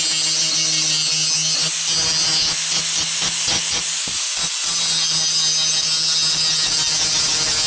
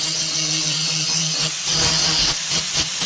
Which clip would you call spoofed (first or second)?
second